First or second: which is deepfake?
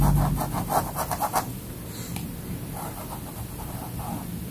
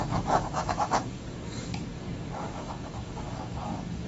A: second